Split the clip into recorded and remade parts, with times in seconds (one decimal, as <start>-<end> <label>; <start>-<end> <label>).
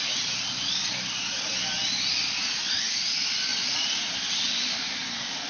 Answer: 0.0-5.5 recorded